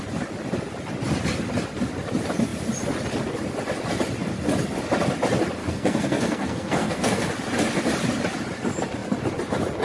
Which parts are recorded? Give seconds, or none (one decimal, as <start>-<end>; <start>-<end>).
0.0-5.6; 7.3-9.8